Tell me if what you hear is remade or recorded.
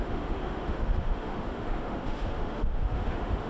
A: remade